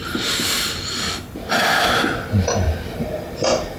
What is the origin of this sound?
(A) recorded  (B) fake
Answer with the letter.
A